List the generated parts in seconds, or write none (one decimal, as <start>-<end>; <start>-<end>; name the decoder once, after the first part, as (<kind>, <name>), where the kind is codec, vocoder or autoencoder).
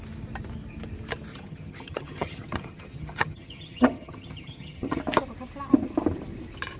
1.3-5.0 (vocoder, HiFi-GAN)